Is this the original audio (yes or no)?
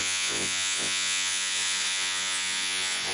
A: no